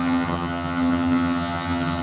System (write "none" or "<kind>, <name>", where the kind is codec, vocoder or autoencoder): vocoder, HiFi-GAN